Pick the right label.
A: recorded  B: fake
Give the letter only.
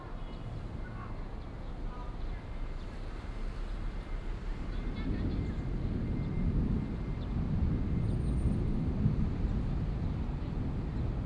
A